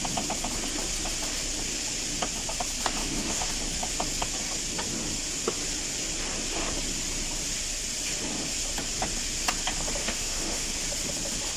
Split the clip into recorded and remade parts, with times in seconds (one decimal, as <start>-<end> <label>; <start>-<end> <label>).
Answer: 0.0-3.0 recorded; 3.0-3.5 remade; 3.5-10.0 recorded; 10.0-10.7 remade; 10.7-11.6 recorded